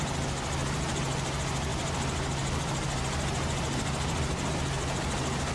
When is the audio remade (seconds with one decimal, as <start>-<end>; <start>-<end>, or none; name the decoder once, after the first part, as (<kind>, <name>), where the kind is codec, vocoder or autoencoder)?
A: none